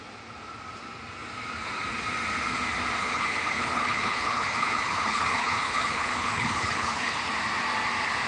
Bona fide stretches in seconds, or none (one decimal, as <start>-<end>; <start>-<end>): 0.0-3.0; 7.3-8.3